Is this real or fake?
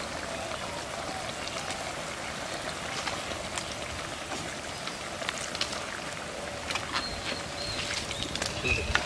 real